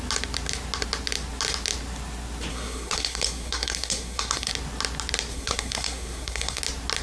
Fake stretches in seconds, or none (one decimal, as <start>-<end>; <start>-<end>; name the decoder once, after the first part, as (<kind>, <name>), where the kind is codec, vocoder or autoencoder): 2.5-4.5 (codec, SNAC); 5.3-6.6